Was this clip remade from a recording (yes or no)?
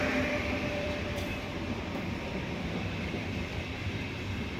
yes